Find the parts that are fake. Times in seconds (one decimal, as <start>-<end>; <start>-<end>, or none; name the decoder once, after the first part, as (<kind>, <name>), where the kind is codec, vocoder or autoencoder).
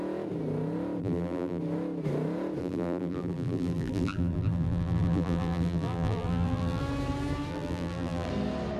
1.0-1.6 (vocoder, BigVGAN v2); 2.6-6.8; 7.5-8.3